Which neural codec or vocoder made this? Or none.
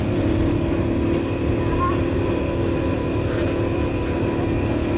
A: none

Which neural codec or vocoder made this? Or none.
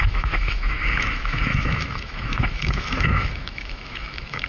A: autoencoder, DAC-VAE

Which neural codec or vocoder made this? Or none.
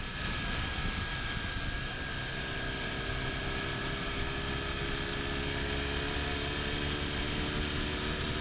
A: none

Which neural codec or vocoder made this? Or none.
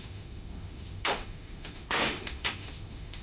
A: autoencoder, DAC-VAE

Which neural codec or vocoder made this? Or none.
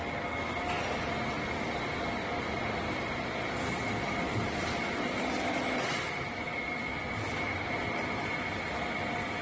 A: none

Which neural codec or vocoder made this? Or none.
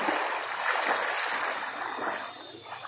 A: none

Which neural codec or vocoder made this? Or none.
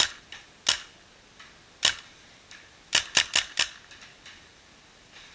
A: none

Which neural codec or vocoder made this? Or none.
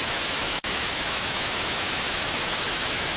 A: autoencoder, DAC-VAE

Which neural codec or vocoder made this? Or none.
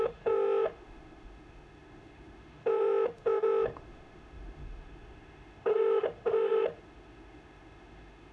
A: autoencoder, DAC-VAE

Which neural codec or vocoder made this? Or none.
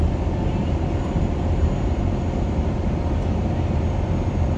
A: none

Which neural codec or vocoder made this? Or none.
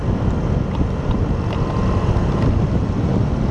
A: none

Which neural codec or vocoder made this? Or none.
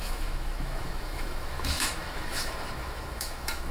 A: autoencoder, DAC-VAE